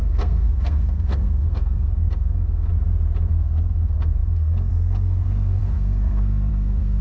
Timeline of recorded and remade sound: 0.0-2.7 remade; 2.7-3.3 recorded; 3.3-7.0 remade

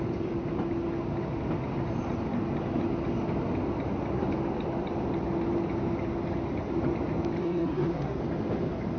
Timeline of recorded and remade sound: 0.0-7.4 recorded; 7.4-8.2 remade; 8.2-9.0 recorded